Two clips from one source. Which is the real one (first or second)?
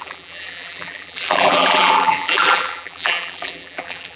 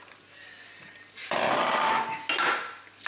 second